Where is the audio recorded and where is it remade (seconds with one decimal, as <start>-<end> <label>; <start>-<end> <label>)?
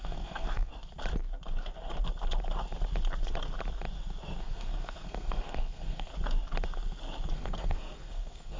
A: 0.0-0.7 remade; 0.7-4.4 recorded; 4.4-6.1 remade; 6.1-7.3 recorded; 7.3-8.6 remade